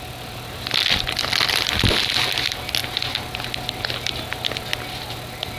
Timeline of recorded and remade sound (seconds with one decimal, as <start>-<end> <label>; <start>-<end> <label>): 0.0-5.6 recorded